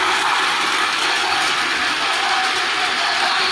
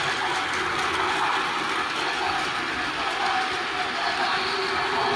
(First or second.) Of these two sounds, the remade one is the first